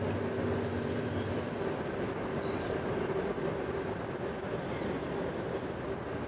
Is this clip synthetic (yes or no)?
no